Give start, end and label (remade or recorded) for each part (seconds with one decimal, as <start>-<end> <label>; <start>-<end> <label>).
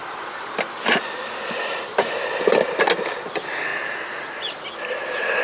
0.0-5.4 recorded